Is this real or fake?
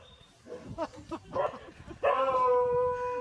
fake